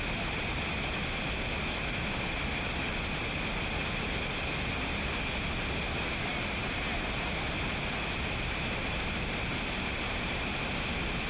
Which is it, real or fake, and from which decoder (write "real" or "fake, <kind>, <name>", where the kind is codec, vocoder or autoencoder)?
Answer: real